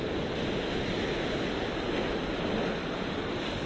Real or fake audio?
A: real